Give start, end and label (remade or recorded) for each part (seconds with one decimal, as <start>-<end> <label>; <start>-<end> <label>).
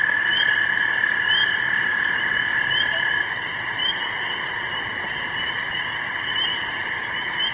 0.0-1.4 recorded; 1.4-2.2 remade; 2.2-7.5 recorded